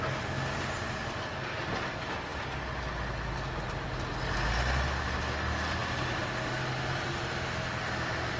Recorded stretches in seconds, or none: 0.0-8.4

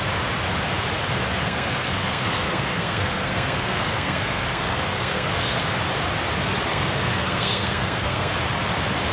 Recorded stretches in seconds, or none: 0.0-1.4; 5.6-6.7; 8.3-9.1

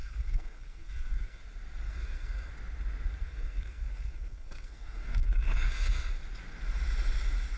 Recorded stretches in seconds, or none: 1.4-1.8; 2.5-3.2; 6.1-7.6

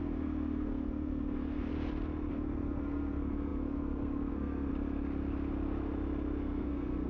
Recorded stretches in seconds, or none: 1.7-2.3; 4.7-6.4